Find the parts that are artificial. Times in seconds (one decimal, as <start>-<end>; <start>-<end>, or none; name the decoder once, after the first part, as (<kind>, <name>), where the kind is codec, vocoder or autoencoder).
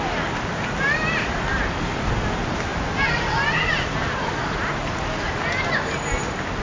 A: none